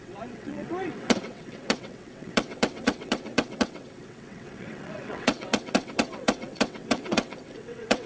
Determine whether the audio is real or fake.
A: fake